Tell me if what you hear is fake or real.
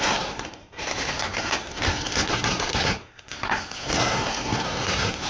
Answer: fake